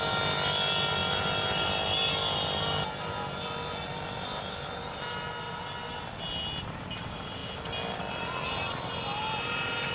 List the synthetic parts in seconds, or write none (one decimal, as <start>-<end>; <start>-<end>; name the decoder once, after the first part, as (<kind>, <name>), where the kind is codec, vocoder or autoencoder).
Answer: none